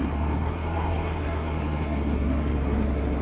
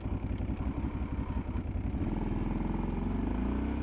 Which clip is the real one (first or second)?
second